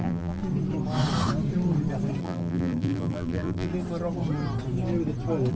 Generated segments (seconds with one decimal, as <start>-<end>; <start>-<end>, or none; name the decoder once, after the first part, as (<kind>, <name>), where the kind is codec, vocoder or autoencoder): 0.0-0.4 (vocoder, BigVGAN v2); 2.2-3.7